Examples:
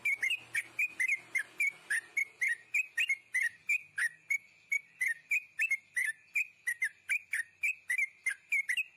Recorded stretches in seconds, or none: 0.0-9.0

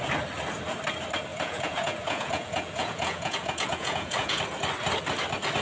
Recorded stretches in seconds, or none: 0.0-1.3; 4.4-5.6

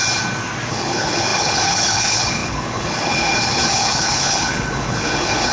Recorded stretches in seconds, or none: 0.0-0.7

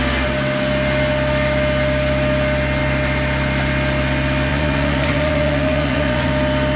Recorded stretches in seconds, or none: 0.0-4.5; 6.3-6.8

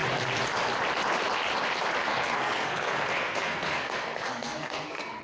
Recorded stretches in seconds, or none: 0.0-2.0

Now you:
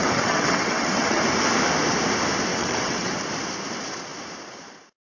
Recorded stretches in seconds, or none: 1.2-2.5; 3.1-5.1

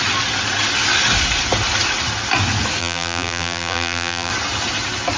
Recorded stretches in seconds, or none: 0.0-2.8; 4.3-5.2